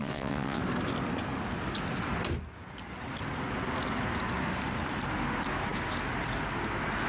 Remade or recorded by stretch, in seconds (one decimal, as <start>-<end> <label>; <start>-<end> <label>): 0.0-0.6 remade; 0.6-7.1 recorded